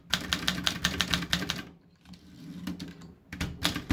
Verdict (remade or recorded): recorded